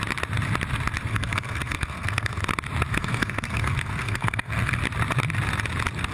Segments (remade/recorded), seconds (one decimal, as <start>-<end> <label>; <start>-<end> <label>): 0.0-1.1 recorded; 1.1-2.4 remade; 2.4-2.9 recorded; 2.9-4.8 remade; 4.8-6.1 recorded